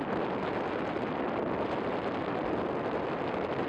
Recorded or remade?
recorded